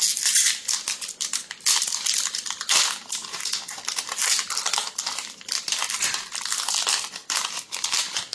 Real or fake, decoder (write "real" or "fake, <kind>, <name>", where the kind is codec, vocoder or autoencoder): real